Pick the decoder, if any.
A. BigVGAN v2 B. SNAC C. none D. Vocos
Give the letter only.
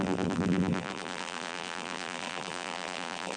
A